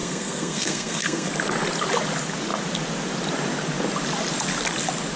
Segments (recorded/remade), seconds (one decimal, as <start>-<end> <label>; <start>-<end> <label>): 0.0-1.3 remade; 1.3-5.2 recorded